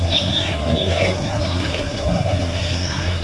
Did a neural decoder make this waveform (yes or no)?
yes